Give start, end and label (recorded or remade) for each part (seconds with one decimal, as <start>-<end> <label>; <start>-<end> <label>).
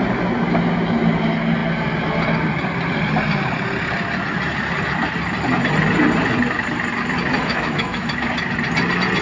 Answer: 0.0-7.4 recorded; 7.4-8.3 remade; 8.3-9.2 recorded